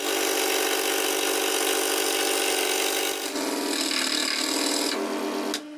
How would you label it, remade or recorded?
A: recorded